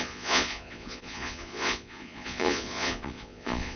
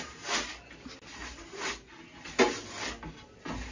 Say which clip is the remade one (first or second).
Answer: first